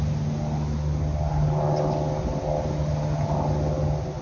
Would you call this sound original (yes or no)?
yes